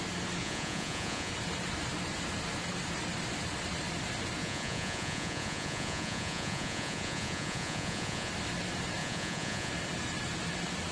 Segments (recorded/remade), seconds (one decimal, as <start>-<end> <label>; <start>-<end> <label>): 0.0-0.4 recorded; 0.4-1.3 remade; 1.3-4.4 recorded; 4.4-8.3 remade; 8.3-9.0 recorded; 9.0-9.7 remade; 9.7-10.9 recorded